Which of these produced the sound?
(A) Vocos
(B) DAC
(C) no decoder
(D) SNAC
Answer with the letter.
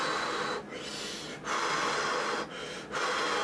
C